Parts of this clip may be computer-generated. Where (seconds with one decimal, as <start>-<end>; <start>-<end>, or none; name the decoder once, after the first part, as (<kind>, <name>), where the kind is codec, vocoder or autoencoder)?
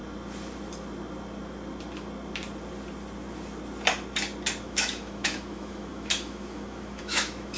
4.6-7.6 (autoencoder, DAC-VAE)